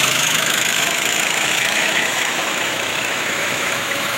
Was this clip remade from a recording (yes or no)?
yes